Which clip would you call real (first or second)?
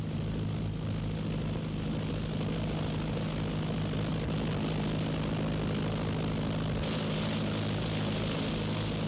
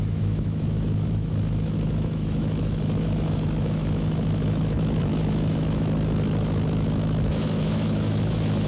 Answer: first